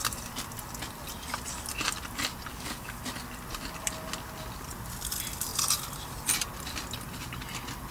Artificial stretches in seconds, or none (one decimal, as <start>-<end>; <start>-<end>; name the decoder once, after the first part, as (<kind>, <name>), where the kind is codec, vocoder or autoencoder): 2.5-3.0 (codec, DAC)